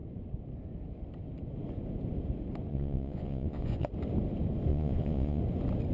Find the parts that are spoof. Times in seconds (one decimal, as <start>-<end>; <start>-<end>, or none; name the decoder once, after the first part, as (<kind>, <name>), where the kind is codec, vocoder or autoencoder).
2.7-3.9 (vocoder, Vocos); 4.7-5.4